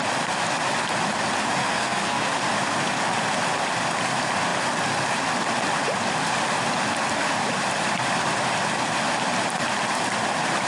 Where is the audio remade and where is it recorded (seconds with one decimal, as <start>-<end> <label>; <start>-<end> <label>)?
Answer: 0.0-1.6 recorded; 1.6-2.3 remade; 2.3-10.7 recorded